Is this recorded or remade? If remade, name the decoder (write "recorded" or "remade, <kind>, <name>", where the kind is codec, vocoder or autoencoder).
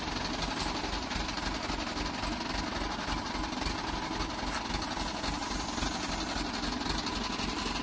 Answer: recorded